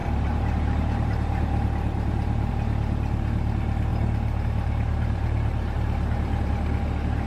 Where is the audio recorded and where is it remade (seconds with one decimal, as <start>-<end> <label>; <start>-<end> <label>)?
0.0-2.5 remade; 2.5-3.9 recorded; 3.9-6.5 remade; 6.5-7.3 recorded